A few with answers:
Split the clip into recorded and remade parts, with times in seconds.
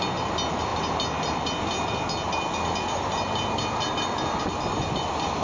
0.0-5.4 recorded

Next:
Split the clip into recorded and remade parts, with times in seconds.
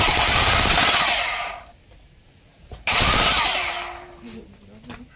0.0-2.3 recorded; 2.3-2.9 remade; 2.9-5.2 recorded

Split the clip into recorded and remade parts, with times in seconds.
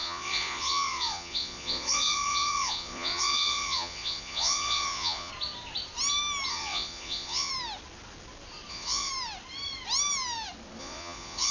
0.0-5.3 remade; 5.3-6.5 recorded; 6.5-7.5 remade; 7.5-8.7 recorded; 8.7-9.1 remade; 9.1-10.8 recorded; 10.8-11.5 remade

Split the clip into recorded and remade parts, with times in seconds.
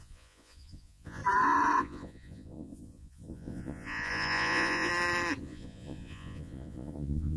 0.0-1.2 remade; 1.2-1.8 recorded; 1.8-4.9 remade; 4.9-5.4 recorded; 5.4-7.4 remade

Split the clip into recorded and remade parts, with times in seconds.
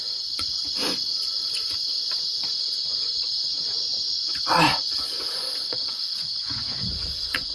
0.0-7.5 remade